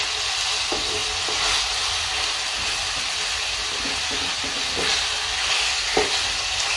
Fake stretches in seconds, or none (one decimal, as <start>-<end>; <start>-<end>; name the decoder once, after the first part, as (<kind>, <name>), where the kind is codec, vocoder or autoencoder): none